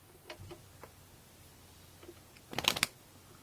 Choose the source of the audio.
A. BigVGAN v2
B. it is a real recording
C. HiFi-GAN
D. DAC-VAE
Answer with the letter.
B